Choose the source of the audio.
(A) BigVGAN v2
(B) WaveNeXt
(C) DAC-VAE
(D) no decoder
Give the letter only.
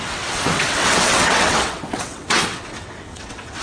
B